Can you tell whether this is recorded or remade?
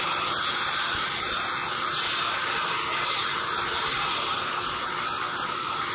recorded